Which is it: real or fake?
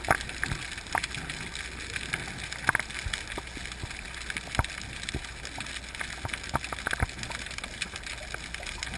real